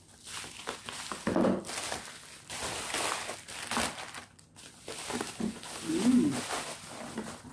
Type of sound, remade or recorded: recorded